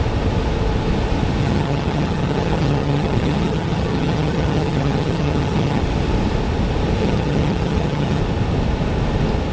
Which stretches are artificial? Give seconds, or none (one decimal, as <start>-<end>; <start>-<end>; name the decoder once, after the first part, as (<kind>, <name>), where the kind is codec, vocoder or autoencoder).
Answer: 1.4-5.8 (vocoder, HiFi-GAN); 7.0-8.2